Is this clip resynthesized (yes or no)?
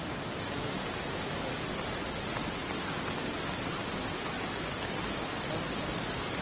no